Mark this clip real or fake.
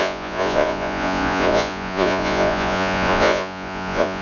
fake